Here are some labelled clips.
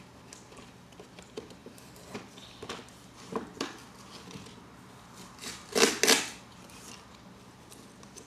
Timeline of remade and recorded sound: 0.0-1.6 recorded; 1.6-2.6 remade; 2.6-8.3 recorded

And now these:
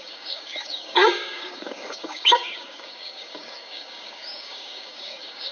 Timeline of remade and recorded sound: 0.0-5.5 remade

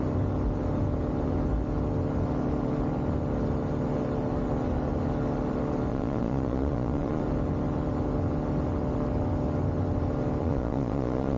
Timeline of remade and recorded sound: 0.0-5.9 recorded; 5.9-7.2 remade; 7.2-10.4 recorded; 10.4-11.4 remade